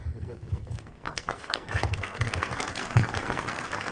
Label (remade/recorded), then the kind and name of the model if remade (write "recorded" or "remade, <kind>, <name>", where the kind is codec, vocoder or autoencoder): remade, codec, SNAC